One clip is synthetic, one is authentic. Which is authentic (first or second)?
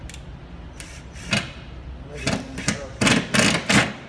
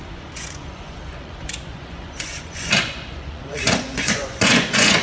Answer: first